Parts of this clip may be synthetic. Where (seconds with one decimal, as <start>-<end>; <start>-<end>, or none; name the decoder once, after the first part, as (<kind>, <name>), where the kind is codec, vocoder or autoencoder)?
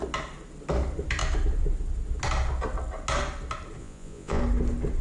3.8-4.4 (vocoder, Vocos)